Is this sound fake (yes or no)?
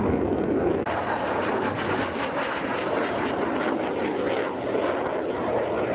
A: no